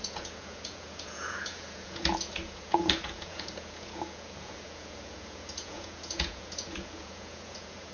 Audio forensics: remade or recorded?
remade